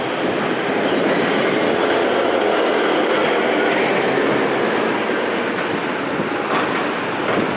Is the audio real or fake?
real